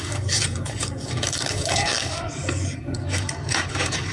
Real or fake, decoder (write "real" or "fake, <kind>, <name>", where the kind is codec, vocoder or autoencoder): fake, codec, DAC